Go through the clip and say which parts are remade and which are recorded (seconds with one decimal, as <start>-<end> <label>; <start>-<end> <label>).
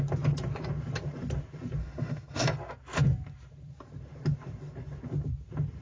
0.0-1.8 recorded; 1.8-2.5 remade; 2.5-5.8 recorded